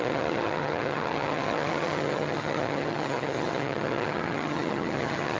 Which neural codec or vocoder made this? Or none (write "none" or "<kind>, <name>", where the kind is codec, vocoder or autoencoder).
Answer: vocoder, HiFi-GAN